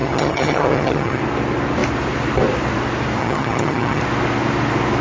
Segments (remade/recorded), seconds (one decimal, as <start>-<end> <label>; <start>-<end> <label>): 0.0-1.2 remade; 1.2-3.2 recorded; 3.2-4.0 remade; 4.0-5.0 recorded